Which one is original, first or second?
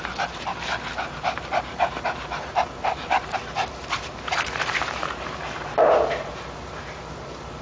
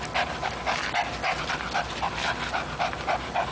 second